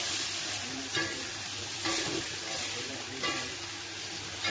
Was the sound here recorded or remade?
recorded